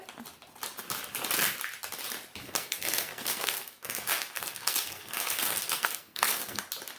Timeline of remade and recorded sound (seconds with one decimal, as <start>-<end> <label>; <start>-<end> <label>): 0.0-2.4 recorded; 2.4-6.6 remade; 6.6-7.0 recorded